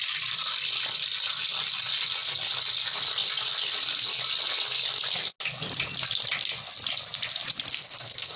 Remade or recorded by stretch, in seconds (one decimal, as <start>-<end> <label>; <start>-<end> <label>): 0.0-7.7 recorded; 7.7-8.4 remade